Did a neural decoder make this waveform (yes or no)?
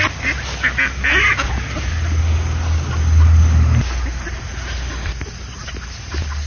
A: no